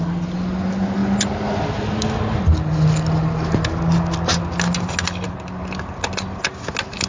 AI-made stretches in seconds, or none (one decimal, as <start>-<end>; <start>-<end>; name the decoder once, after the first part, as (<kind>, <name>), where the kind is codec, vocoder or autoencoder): none